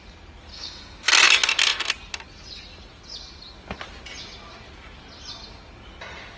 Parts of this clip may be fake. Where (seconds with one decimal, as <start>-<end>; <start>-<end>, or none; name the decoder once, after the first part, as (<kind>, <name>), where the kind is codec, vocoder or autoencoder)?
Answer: 0.5-1.1 (codec, DAC)